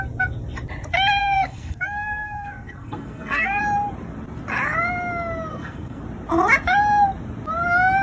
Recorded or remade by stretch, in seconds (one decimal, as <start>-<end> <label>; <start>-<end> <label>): 0.0-1.2 recorded; 1.2-3.6 remade; 3.6-5.5 recorded; 5.5-6.0 remade; 6.0-8.0 recorded